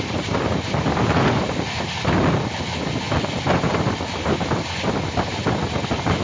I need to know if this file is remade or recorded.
recorded